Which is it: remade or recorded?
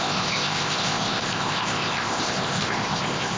remade